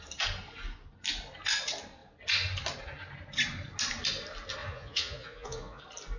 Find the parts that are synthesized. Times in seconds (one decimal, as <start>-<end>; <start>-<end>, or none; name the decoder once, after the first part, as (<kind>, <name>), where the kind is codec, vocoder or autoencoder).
4.6-5.8 (vocoder, Vocos)